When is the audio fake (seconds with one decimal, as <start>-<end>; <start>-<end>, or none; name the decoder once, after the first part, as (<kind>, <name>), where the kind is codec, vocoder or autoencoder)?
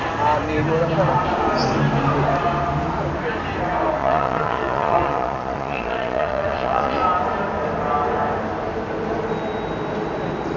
4.0-7.0 (vocoder, Vocos)